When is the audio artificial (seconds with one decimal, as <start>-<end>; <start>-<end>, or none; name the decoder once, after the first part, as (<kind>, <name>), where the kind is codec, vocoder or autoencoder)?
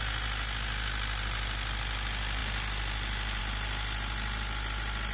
none